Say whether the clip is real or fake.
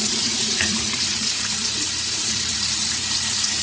fake